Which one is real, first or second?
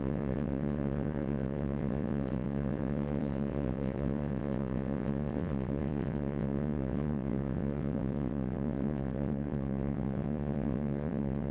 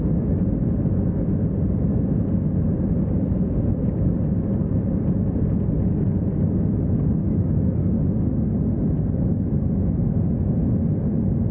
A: second